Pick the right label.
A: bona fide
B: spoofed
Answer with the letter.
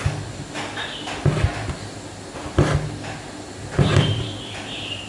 A